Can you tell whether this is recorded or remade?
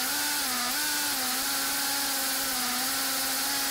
recorded